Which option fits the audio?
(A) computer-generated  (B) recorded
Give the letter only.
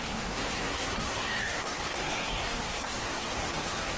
A